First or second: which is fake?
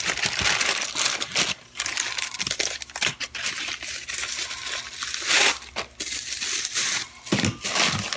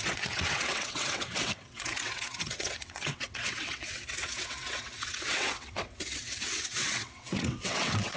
second